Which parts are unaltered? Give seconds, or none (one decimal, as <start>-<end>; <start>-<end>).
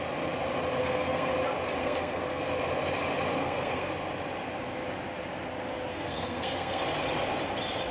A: 0.0-0.8; 1.3-1.8; 2.4-3.4; 3.9-5.9; 6.8-7.9